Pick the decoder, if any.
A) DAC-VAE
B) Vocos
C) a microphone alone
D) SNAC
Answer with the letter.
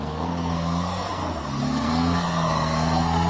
D